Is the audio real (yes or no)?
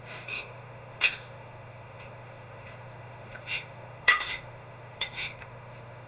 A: no